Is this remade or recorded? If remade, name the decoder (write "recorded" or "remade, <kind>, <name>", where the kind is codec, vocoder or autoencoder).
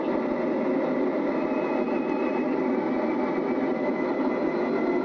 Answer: recorded